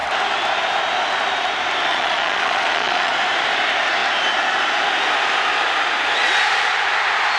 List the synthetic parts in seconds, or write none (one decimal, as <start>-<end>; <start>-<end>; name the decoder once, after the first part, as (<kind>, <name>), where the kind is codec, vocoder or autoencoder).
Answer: 1.9-3.1 (vocoder, Vocos)